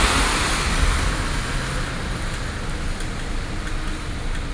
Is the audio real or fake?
real